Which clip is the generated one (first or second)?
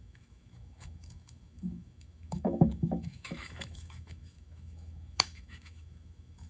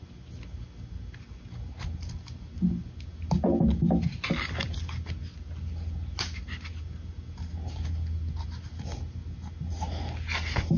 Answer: first